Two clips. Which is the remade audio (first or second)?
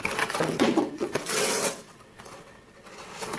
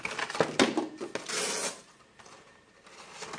first